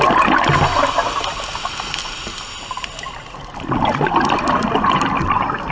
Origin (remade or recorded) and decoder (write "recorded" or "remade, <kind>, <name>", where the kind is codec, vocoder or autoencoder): recorded